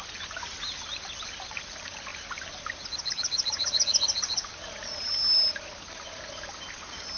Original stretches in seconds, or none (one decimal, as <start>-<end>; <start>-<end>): 0.0-7.2